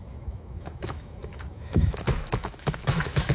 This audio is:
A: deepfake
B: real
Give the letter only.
A